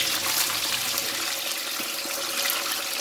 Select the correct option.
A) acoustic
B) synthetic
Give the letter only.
A